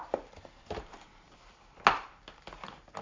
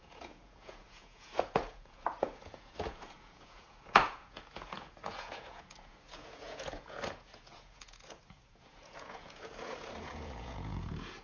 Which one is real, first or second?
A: first